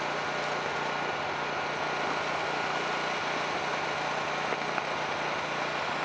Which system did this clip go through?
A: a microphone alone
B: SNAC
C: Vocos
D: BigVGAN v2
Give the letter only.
A